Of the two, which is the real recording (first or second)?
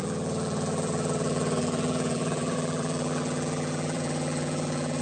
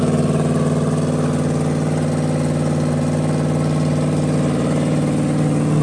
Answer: second